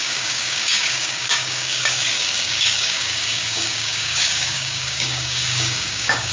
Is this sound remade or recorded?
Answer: remade